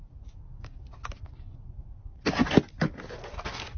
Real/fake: real